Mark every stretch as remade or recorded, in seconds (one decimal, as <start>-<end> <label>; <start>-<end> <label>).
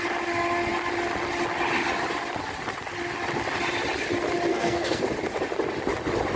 0.0-4.5 recorded; 4.5-5.0 remade; 5.0-6.4 recorded